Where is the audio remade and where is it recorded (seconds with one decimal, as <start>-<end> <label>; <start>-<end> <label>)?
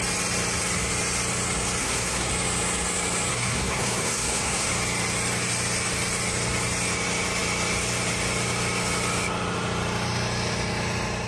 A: 0.0-1.8 recorded; 1.8-2.3 remade; 2.3-3.3 recorded; 3.3-4.7 remade; 4.7-11.3 recorded